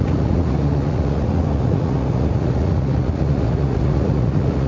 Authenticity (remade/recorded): remade